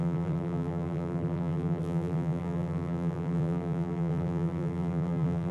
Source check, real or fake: fake